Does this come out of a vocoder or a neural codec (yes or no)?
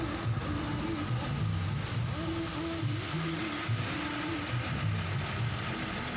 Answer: no